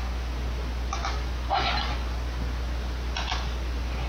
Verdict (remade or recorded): recorded